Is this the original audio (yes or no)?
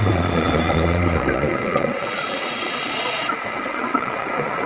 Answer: no